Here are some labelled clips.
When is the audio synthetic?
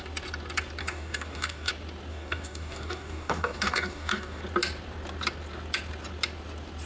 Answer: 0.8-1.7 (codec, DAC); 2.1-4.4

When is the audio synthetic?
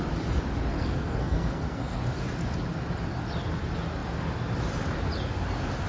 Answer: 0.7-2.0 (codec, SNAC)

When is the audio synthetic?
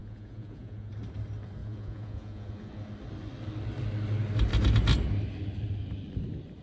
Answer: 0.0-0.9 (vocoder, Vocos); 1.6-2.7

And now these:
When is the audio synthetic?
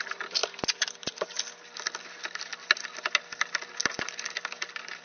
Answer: none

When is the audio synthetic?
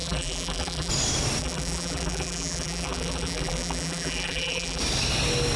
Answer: 0.0-0.9 (vocoder, BigVGAN v2); 1.4-4.8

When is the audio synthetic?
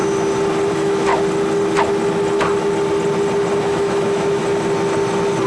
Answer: 0.7-1.1 (autoencoder, DAC-VAE); 3.6-4.4